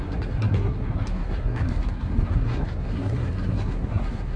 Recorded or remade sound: remade